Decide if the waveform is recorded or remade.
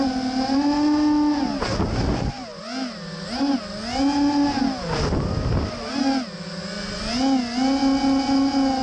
recorded